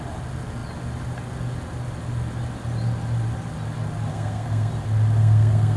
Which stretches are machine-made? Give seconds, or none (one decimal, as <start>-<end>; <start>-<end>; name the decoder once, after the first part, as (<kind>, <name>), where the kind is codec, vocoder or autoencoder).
4.1-4.7 (codec, SNAC); 5.2-5.8